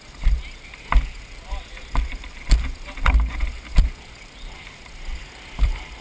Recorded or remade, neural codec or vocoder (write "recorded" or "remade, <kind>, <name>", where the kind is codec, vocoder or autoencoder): remade, vocoder, BigVGAN v2